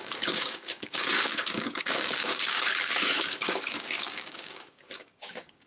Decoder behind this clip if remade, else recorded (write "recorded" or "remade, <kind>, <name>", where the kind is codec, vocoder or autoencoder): remade, codec, DAC